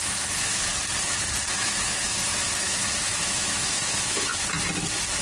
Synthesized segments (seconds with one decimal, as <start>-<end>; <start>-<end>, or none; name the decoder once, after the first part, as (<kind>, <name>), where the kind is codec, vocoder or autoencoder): 0.0-0.7 (autoencoder, DAC-VAE); 1.5-4.3